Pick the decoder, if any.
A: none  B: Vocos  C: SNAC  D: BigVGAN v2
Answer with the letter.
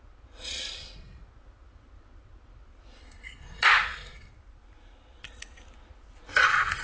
A